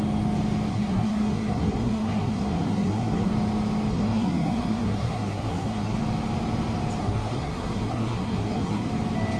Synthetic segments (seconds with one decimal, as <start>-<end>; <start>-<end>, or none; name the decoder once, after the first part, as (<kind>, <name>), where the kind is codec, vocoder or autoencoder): 0.7-3.3 (codec, SNAC); 3.9-6.0; 7.0-8.9